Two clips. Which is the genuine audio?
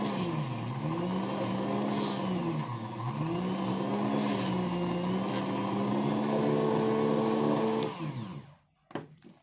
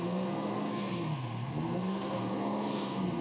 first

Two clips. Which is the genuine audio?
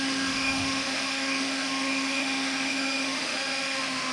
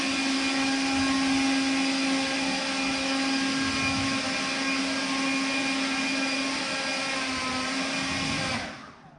second